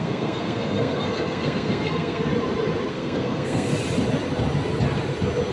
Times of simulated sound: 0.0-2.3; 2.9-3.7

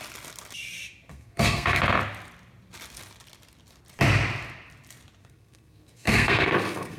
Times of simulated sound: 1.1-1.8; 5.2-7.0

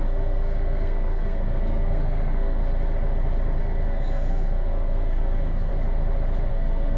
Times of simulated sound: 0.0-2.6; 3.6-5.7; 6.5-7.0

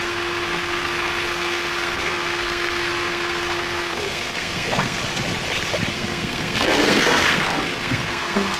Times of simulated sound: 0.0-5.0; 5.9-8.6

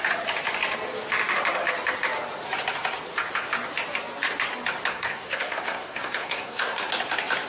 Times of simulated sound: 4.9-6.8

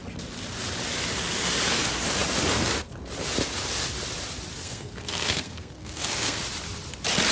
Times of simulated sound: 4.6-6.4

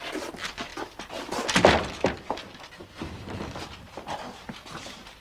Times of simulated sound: none

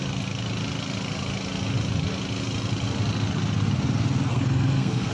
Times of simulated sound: 4.3-5.1